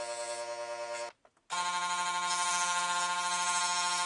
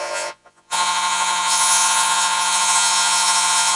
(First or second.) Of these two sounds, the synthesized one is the second